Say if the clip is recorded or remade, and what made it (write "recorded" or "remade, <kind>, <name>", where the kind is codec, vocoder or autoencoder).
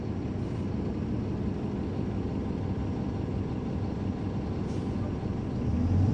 recorded